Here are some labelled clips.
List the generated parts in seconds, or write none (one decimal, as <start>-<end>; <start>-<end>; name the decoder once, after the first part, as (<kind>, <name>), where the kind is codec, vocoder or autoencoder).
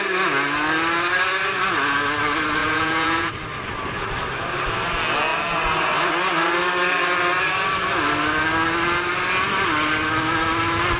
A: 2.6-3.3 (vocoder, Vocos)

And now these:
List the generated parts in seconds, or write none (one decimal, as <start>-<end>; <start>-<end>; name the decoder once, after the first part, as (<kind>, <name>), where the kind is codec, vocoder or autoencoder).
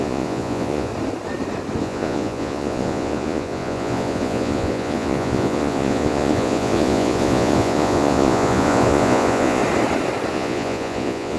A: 0.0-0.9 (vocoder, Vocos); 1.8-9.6; 10.3-11.4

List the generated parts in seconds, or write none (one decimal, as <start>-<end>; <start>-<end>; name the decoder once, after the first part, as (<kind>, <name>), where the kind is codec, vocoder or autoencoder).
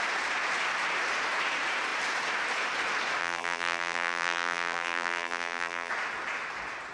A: 3.2-5.9 (vocoder, BigVGAN v2)